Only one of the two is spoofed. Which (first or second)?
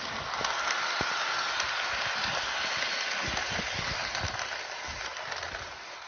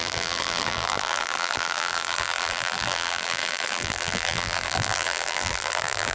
second